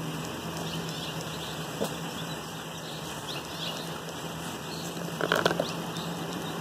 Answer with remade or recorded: recorded